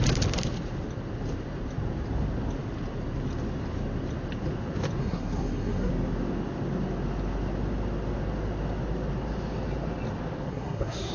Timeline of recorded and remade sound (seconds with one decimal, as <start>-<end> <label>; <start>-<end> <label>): 0.0-5.0 recorded; 5.0-5.9 remade; 5.9-10.5 recorded; 10.5-11.1 remade